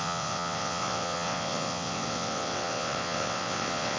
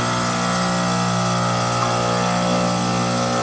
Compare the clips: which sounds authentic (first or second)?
second